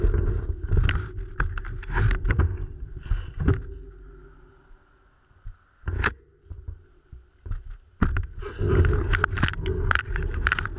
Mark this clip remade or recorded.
recorded